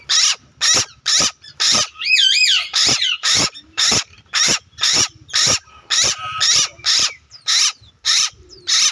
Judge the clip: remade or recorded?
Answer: remade